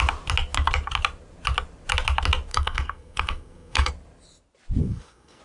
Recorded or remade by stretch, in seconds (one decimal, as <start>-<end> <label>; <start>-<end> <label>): 0.0-2.5 recorded; 2.5-3.9 remade; 3.9-4.8 recorded; 4.8-5.4 remade